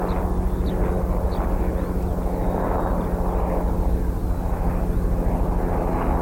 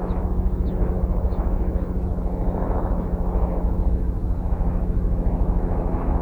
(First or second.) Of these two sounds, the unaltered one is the first